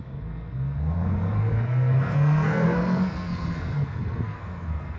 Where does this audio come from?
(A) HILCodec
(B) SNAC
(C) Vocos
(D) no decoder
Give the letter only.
B